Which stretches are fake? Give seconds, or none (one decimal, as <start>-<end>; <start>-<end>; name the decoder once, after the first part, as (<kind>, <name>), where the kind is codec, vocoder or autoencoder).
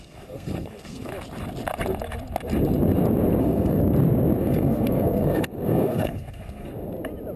0.0-1.1 (codec, SNAC); 3.4-3.8; 4.4-6.7